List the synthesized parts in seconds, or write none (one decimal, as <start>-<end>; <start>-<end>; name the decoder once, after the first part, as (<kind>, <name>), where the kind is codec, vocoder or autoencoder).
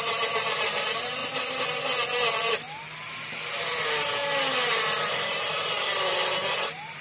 0.0-1.2 (vocoder, BigVGAN v2); 5.1-7.0